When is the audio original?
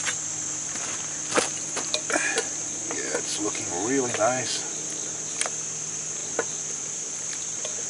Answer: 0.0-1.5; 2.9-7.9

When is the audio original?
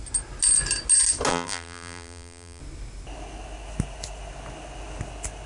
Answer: 0.0-1.3; 2.6-5.5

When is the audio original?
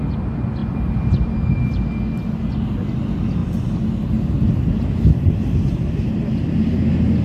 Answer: 0.0-7.2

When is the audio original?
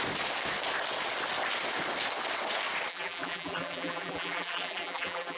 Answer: 0.0-2.9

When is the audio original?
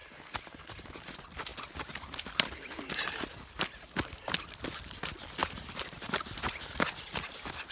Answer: 0.0-5.4; 6.6-7.7